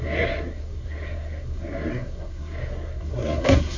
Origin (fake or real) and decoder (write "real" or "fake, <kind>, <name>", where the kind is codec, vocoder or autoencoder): fake, codec, SNAC